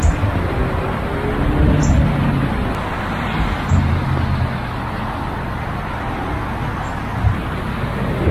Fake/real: real